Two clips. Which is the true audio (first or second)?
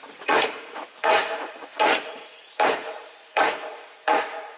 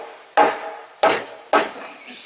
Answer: second